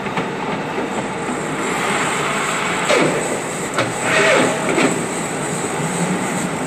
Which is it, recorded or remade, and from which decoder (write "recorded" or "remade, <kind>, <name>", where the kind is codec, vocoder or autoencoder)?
remade, vocoder, BigVGAN v2